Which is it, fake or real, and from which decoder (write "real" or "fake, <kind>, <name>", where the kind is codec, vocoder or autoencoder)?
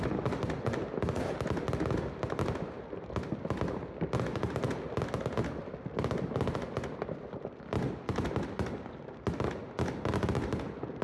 real